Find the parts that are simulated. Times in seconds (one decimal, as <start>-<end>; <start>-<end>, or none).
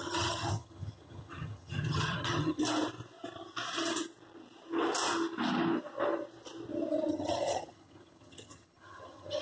0.0-2.6; 7.1-9.4